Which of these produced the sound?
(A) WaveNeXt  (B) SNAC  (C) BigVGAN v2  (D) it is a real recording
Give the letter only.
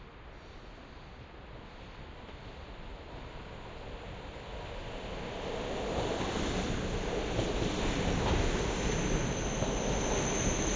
D